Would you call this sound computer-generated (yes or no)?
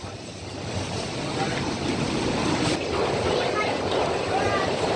no